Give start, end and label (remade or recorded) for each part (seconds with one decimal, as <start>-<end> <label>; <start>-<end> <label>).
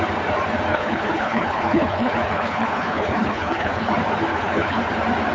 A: 0.0-0.7 recorded; 0.7-3.9 remade; 3.9-4.3 recorded; 4.3-4.8 remade; 4.8-5.3 recorded